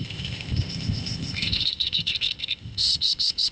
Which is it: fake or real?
fake